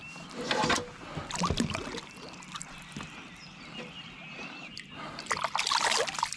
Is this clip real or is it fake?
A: real